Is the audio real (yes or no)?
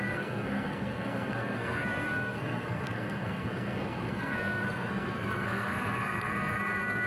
no